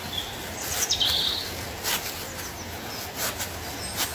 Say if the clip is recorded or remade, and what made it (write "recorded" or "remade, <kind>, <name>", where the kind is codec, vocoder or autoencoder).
recorded